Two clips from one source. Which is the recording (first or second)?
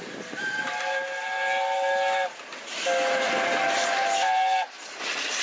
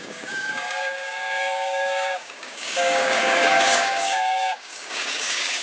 first